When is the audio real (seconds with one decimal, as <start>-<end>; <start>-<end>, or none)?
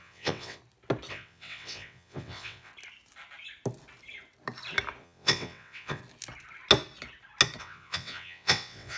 0.6-1.1; 2.7-5.0; 6.0-7.6